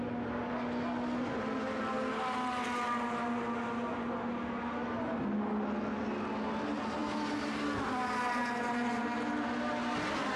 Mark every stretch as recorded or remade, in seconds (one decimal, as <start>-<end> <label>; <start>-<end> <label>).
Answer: 0.0-10.4 recorded